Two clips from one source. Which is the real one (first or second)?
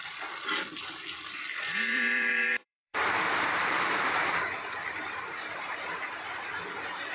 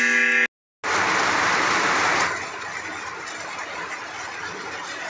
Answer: second